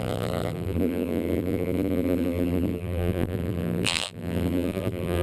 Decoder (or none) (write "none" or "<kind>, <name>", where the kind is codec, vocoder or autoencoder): vocoder, BigVGAN v2